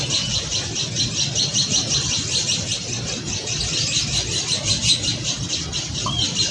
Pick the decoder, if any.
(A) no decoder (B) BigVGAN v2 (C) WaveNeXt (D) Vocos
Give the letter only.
A